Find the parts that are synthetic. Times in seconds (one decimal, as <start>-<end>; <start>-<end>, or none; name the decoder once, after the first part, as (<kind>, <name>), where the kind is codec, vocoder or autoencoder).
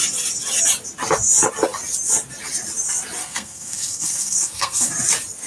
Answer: 3.2-4.9 (codec, SNAC)